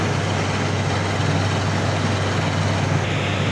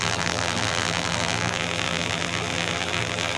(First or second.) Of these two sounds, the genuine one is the first